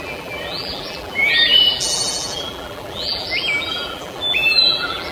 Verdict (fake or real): fake